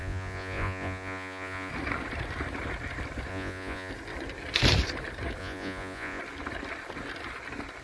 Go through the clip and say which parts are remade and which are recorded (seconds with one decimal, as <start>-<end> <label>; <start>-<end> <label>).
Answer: 0.0-1.7 remade; 1.7-3.3 recorded; 3.3-3.9 remade; 3.9-5.4 recorded; 5.4-6.2 remade; 6.2-7.8 recorded